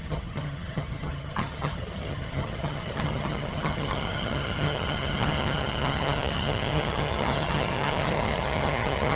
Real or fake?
fake